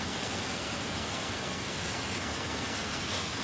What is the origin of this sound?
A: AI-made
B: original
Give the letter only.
A